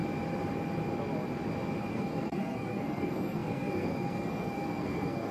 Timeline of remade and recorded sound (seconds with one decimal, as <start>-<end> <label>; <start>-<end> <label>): 0.0-1.9 recorded; 1.9-5.3 remade